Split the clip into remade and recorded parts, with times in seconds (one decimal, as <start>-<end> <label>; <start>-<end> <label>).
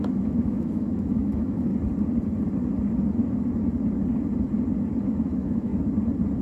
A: 0.0-1.7 remade; 1.7-5.0 recorded; 5.0-5.7 remade; 5.7-6.4 recorded